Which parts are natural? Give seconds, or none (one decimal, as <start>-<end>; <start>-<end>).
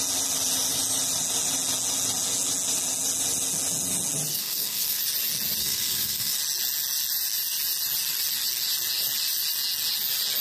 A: 0.0-4.3; 5.0-5.6; 6.4-10.4